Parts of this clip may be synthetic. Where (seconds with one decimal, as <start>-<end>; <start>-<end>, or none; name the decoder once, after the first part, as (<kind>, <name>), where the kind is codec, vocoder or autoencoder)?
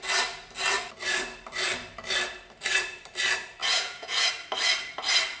3.6-4.3 (vocoder, Vocos)